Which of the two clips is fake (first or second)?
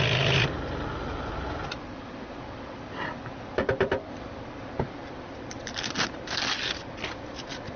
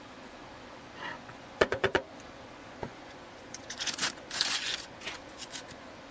second